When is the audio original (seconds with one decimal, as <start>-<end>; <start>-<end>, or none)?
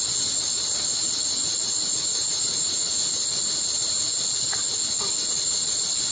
0.0-6.1